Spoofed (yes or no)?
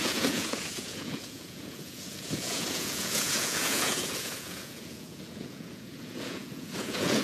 yes